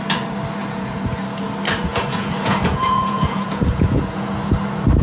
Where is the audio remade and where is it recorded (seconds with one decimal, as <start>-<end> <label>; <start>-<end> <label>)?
0.0-0.6 recorded; 0.6-1.4 remade; 1.4-1.9 recorded; 1.9-4.3 remade; 4.3-5.0 recorded